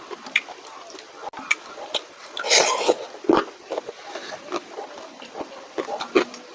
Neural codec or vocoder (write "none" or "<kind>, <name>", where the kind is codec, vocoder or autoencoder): none